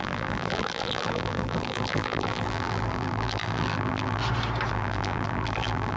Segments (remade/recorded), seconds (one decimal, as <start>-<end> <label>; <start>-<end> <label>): 0.0-4.2 remade; 4.2-4.7 recorded; 4.7-6.0 remade